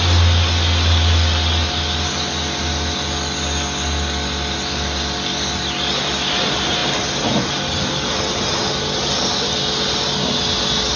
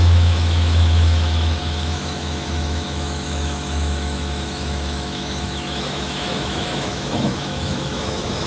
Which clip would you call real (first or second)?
first